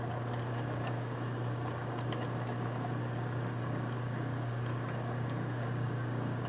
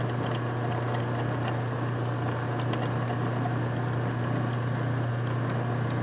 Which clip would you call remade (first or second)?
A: first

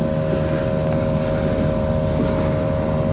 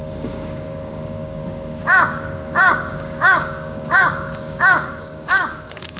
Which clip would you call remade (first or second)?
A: second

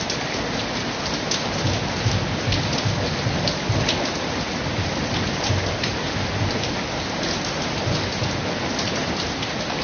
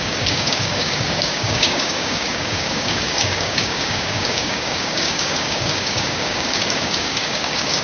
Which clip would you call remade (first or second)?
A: second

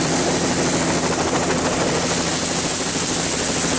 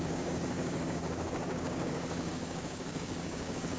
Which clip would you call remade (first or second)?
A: second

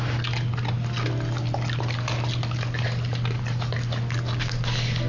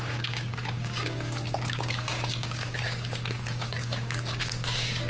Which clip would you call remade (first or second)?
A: second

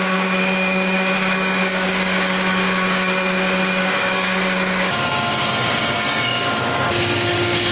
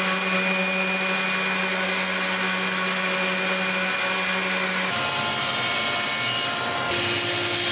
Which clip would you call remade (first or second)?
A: first